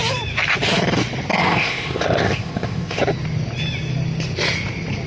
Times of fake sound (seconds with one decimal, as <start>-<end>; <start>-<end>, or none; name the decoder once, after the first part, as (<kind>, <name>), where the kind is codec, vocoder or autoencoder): 1.4-3.0 (codec, ZipCodec)